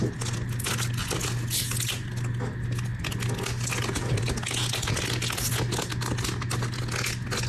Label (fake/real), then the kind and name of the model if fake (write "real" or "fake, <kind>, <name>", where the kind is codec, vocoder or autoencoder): real